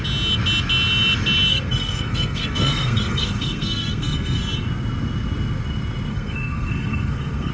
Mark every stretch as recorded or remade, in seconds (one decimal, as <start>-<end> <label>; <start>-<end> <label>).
0.0-1.5 recorded; 1.5-4.4 remade; 4.4-6.1 recorded; 6.1-7.5 remade